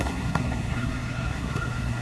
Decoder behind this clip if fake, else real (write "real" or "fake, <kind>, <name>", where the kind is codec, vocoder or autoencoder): fake, codec, SNAC